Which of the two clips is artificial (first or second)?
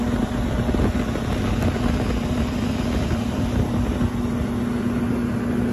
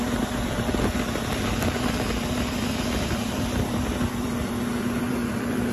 second